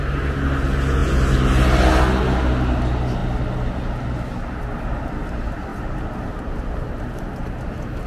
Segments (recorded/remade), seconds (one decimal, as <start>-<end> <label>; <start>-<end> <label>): 0.0-8.1 recorded